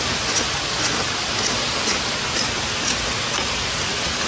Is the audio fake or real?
real